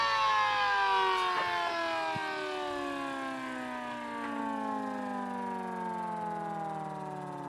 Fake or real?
real